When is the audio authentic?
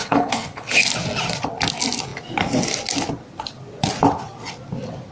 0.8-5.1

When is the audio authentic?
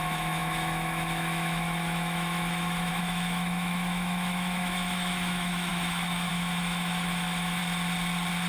7.6-8.5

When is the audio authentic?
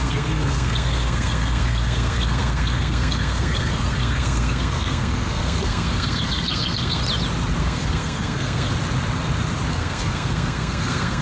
7.0-7.6; 8.7-9.7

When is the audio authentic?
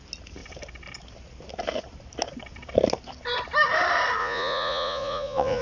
0.0-4.2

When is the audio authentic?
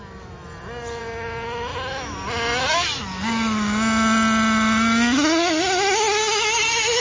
0.0-7.0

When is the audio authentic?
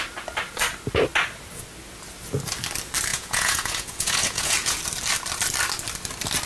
0.0-3.1; 4.8-6.5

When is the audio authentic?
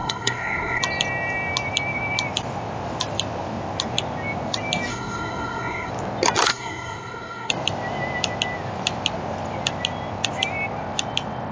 0.8-4.9; 5.9-6.5; 7.5-11.5